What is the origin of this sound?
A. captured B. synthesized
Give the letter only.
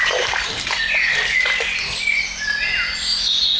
A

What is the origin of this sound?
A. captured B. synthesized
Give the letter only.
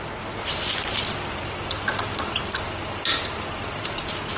A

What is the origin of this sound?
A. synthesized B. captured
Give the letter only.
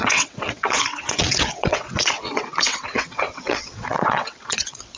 A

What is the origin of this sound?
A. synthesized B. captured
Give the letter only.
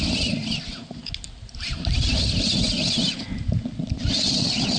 B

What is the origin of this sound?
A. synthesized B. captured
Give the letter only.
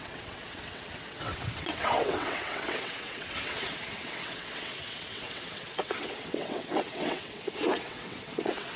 A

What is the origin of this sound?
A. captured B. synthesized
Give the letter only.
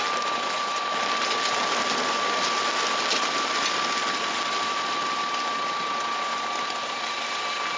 A